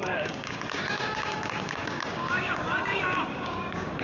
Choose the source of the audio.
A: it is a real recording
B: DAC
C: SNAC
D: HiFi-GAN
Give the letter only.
B